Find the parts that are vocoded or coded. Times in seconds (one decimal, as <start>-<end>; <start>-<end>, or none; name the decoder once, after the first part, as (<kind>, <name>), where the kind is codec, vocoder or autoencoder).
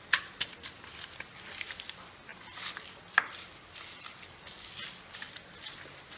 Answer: none